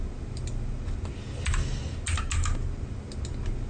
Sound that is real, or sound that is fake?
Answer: real